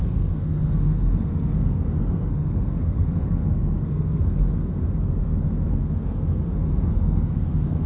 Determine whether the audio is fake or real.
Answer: fake